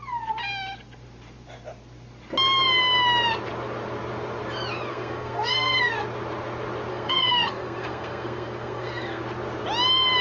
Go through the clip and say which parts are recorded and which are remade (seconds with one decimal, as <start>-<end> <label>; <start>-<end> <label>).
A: 0.0-4.9 recorded; 4.9-6.0 remade; 6.0-6.9 recorded; 6.9-9.2 remade; 9.2-10.2 recorded